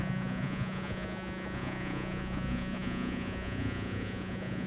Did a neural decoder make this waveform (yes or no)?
yes